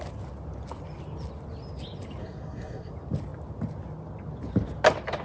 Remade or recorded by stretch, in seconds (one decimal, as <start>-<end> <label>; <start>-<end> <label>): 0.0-2.2 recorded; 2.2-2.9 remade; 2.9-5.2 recorded